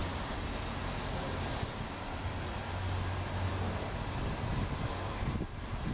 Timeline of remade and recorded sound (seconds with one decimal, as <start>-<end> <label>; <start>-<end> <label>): 0.0-5.9 recorded

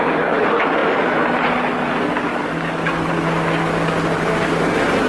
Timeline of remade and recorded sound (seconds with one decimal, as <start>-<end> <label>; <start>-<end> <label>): 0.0-2.3 recorded; 2.3-3.1 remade; 3.1-5.1 recorded

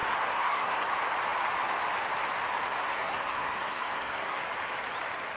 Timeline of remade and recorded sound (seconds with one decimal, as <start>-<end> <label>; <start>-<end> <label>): 0.0-0.9 remade; 0.9-2.7 recorded; 2.7-4.4 remade; 4.4-5.4 recorded